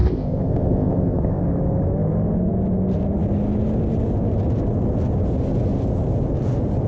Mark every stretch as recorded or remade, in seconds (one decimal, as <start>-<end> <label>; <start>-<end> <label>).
0.0-1.4 remade; 1.4-6.9 recorded